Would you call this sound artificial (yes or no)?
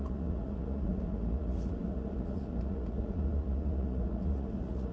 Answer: yes